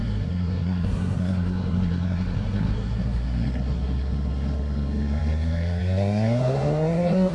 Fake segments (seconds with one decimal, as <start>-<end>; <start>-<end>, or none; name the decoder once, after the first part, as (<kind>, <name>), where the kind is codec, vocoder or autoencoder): 0.0-7.3 (codec, SNAC)